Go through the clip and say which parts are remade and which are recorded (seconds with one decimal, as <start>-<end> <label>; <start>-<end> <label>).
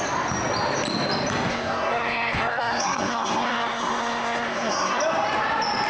0.0-1.5 recorded; 1.5-5.0 remade; 5.0-5.9 recorded